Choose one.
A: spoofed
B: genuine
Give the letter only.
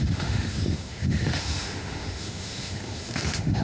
A